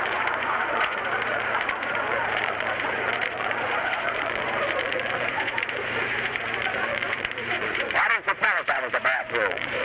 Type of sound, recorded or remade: remade